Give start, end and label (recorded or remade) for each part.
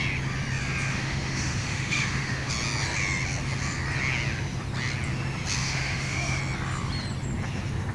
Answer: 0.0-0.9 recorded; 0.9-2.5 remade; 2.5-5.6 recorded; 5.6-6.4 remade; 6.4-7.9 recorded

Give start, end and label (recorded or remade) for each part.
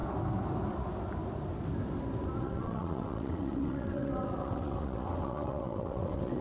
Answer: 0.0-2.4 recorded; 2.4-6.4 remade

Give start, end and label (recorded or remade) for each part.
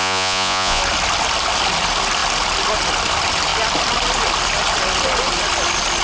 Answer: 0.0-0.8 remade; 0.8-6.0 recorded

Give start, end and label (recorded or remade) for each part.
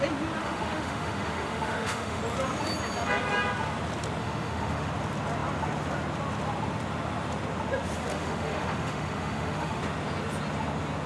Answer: 0.0-0.4 recorded; 0.4-2.2 remade; 2.2-4.2 recorded; 4.2-4.9 remade; 4.9-8.1 recorded; 8.1-9.8 remade; 9.8-11.1 recorded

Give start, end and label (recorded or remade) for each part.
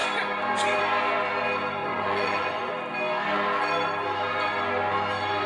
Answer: 0.0-1.8 recorded; 1.8-2.7 remade; 2.7-5.5 recorded